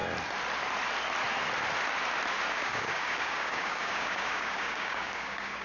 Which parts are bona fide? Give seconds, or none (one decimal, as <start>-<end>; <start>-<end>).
0.0-2.5